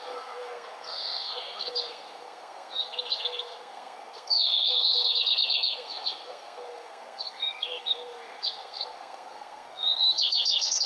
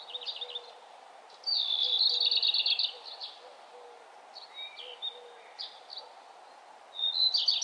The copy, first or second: first